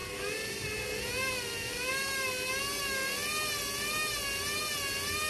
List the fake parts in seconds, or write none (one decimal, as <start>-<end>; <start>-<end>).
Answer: none